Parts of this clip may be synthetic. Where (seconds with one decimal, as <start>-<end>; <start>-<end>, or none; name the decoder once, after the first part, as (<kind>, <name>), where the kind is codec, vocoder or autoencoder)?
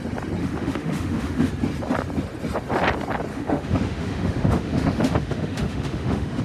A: 0.4-1.5 (autoencoder, DAC-VAE); 3.3-6.4